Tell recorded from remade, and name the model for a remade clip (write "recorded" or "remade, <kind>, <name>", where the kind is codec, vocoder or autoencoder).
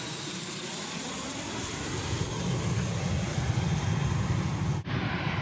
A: recorded